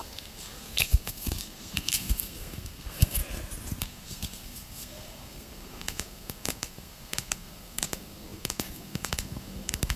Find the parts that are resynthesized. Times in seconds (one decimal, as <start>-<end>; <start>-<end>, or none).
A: 0.0-3.2; 3.8-10.0